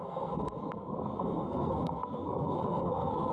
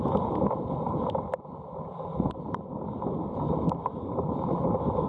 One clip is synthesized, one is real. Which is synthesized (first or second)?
first